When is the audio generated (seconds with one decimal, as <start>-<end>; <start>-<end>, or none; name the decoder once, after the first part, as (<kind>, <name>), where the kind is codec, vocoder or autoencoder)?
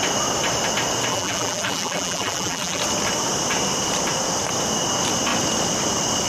1.1-2.8 (vocoder, BigVGAN v2)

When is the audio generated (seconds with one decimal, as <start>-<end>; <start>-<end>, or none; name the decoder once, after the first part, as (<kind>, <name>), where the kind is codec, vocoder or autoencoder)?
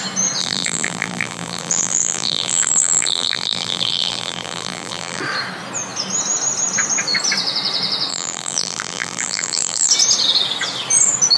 0.4-5.2 (vocoder, BigVGAN v2); 8.1-9.9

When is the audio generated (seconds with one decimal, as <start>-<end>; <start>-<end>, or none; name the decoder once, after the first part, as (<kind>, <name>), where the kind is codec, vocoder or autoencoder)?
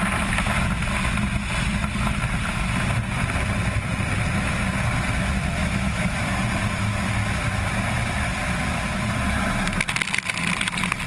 5.6-6.2 (autoencoder, DAC-VAE)